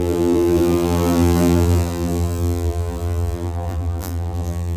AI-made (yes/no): yes